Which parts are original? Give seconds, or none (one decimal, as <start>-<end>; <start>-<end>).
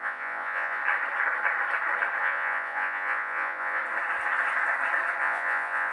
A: 0.8-2.2; 3.8-5.2